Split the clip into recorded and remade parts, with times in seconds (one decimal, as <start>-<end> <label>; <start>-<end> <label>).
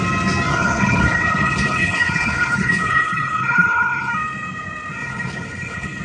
0.0-0.5 recorded; 0.5-4.1 remade; 4.1-5.0 recorded; 5.0-6.0 remade